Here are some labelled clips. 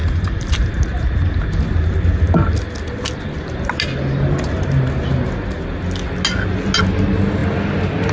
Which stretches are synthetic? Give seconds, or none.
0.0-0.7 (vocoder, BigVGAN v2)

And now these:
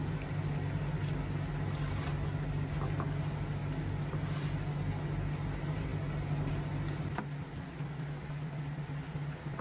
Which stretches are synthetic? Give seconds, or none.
none

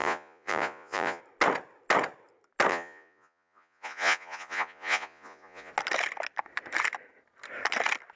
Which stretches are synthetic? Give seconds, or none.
0.0-1.2 (vocoder, Vocos); 2.7-5.7